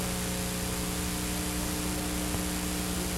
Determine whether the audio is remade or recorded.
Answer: recorded